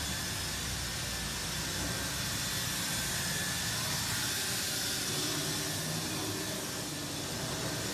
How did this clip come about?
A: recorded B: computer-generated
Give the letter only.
A